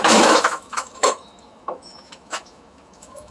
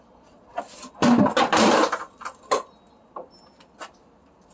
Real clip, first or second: second